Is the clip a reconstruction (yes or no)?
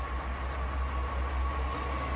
no